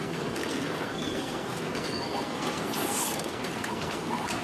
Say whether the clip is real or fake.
fake